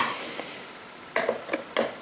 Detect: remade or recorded recorded